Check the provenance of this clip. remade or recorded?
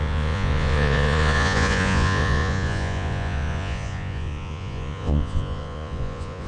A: remade